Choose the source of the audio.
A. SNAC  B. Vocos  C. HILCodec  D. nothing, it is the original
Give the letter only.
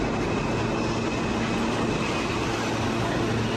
D